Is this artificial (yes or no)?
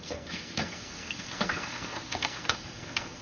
yes